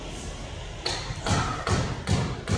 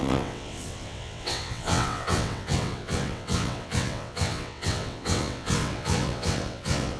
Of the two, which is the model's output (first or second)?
second